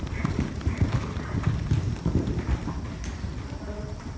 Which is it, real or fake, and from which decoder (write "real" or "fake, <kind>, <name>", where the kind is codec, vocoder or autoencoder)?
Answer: real